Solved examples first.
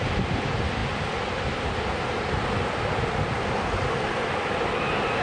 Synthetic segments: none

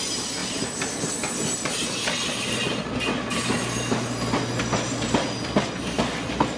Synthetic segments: none

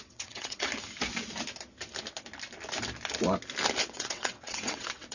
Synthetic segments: 0.0-0.7 (vocoder, WaveNeXt); 3.8-5.1

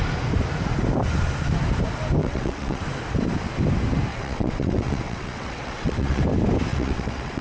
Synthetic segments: 2.2-2.8 (vocoder, WaveNeXt); 4.1-6.2; 6.7-7.4

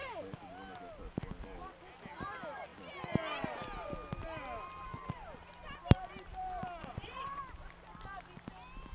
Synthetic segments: 6.8-7.4 (vocoder, WaveNeXt)

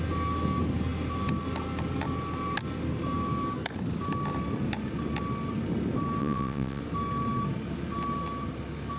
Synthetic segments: 6.2-6.8 (vocoder, WaveNeXt)